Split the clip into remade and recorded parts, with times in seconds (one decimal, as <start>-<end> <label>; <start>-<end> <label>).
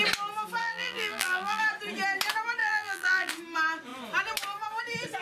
0.0-0.6 recorded; 0.6-1.6 remade; 1.6-2.6 recorded; 2.6-3.3 remade; 3.3-5.2 recorded